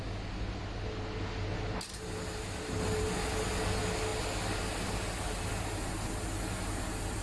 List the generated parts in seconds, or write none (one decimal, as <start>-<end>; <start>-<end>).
none